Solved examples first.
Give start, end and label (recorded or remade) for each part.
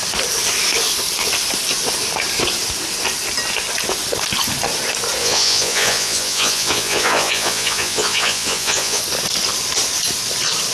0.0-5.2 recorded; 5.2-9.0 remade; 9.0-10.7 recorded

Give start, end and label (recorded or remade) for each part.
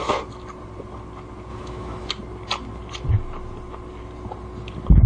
0.0-1.5 recorded; 1.5-2.1 remade; 2.1-5.1 recorded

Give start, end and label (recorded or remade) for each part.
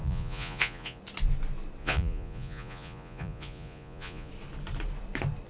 0.0-1.0 remade; 1.0-1.8 recorded; 1.8-4.3 remade; 4.3-5.5 recorded